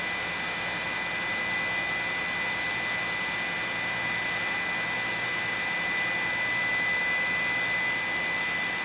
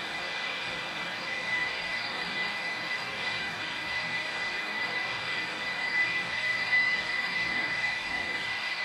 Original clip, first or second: first